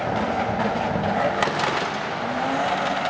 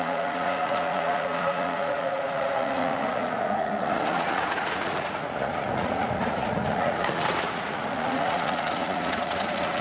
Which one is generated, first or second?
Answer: second